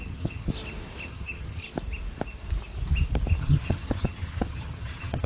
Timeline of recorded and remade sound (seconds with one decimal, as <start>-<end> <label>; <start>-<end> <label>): 0.0-0.5 remade; 0.5-1.1 recorded; 1.1-1.6 remade; 1.6-3.4 recorded; 3.4-5.3 remade